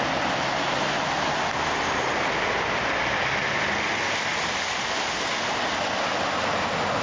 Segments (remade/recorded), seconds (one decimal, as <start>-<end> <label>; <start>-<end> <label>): 0.0-7.0 recorded